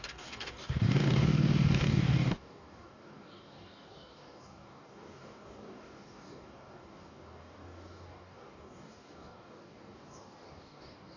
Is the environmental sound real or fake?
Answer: fake